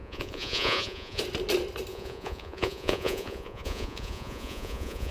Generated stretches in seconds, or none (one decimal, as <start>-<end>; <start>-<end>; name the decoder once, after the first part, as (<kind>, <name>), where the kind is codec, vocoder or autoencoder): 0.0-1.2 (vocoder, Vocos); 1.9-5.1